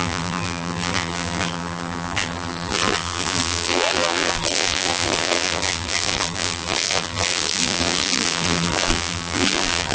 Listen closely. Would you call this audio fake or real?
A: fake